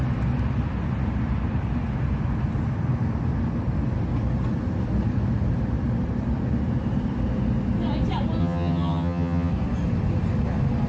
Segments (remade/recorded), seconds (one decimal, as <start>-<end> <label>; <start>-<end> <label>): 0.0-8.4 recorded; 8.4-9.5 remade; 9.5-10.9 recorded